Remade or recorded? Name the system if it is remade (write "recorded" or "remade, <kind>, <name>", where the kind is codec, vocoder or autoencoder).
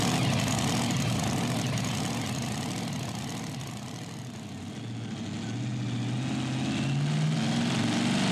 recorded